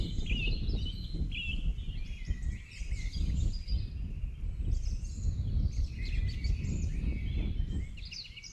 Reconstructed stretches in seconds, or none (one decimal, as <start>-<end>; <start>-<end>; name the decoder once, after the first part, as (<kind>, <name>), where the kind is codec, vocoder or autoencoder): none